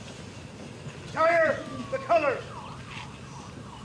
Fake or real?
real